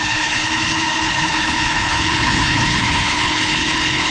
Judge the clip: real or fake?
fake